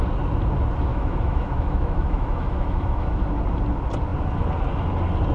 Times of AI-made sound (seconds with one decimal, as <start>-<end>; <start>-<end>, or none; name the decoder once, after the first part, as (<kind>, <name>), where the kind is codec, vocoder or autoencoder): 0.9-3.2 (autoencoder, DAC-VAE)